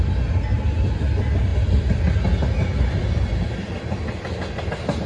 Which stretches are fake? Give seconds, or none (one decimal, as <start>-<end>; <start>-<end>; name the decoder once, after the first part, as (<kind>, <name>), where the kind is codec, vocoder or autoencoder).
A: none